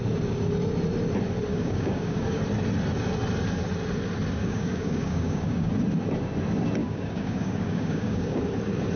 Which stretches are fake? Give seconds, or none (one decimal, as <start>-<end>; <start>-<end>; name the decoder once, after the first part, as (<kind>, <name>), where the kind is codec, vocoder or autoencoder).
1.5-2.4 (codec, DAC); 4.4-5.7; 6.8-8.4